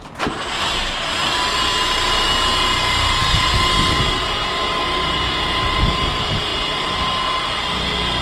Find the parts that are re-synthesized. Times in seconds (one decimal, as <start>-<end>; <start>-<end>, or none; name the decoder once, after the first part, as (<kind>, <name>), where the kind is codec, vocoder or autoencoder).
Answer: none